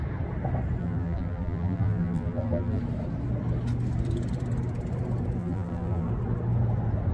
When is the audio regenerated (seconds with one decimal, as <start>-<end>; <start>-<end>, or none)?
0.8-2.8; 5.4-6.1